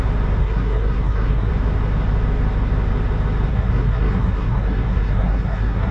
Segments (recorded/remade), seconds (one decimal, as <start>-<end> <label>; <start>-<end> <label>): 0.0-0.4 recorded; 0.4-1.5 remade; 1.5-3.5 recorded; 3.5-5.9 remade

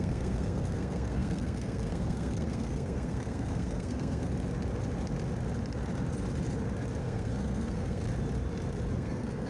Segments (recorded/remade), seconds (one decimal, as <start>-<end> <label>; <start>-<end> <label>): 0.0-4.3 remade; 4.3-7.0 recorded; 7.0-8.0 remade; 8.0-8.9 recorded; 8.9-9.5 remade

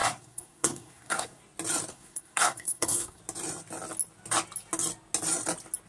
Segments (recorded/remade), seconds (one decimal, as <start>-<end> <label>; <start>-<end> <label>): 0.0-1.4 remade; 1.4-1.9 recorded; 1.9-3.2 remade; 3.2-5.9 recorded

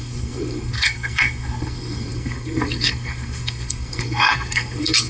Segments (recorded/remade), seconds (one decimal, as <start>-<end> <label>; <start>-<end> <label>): 0.0-5.1 remade